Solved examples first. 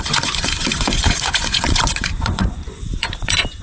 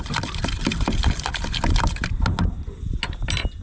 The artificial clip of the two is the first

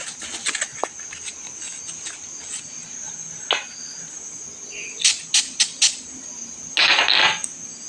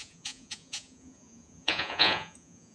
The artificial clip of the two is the second